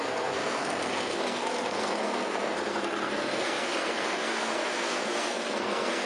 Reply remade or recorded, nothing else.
remade